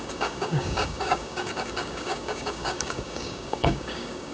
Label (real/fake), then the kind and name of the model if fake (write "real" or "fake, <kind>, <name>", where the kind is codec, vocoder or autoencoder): fake, codec, DAC